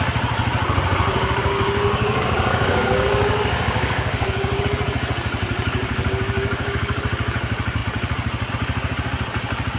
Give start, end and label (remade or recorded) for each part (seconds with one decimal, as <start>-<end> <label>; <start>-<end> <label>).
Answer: 0.0-1.1 recorded; 1.1-4.6 remade; 4.6-5.9 recorded; 5.9-7.0 remade; 7.0-9.8 recorded